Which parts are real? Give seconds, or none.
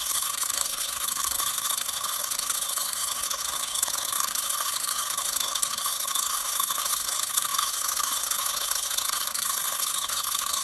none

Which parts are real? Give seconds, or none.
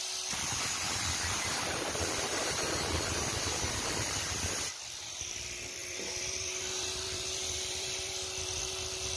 none